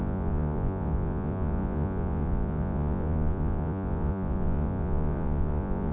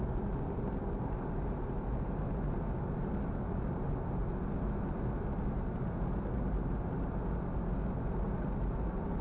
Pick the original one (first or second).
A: second